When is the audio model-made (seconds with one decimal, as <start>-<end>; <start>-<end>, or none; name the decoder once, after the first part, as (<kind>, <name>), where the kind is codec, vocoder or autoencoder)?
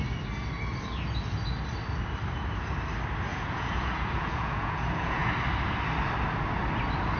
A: 3.3-5.3 (vocoder, Vocos)